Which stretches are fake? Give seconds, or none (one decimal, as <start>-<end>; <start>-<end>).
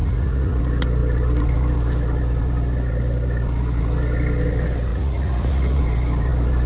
0.0-0.6; 4.9-5.8